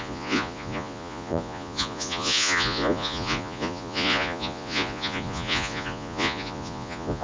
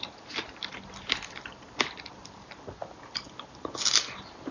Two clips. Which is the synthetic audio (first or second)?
first